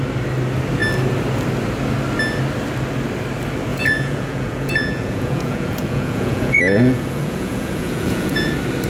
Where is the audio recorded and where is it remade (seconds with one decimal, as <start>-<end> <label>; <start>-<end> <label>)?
0.0-3.7 recorded; 3.7-8.5 remade; 8.5-8.9 recorded